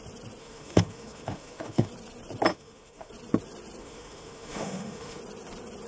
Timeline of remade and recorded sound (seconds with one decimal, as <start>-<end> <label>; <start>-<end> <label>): 0.0-0.4 recorded; 0.4-1.9 remade; 1.9-2.5 recorded; 2.5-3.1 remade; 3.1-3.8 recorded; 3.8-5.2 remade; 5.2-5.9 recorded